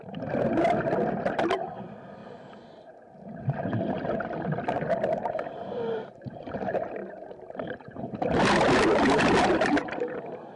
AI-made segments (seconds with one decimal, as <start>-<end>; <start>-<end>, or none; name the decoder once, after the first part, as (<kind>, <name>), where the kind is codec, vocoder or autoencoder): none